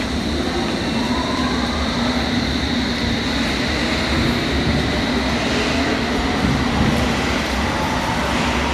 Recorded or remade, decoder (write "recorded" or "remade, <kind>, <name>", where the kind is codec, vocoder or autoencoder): recorded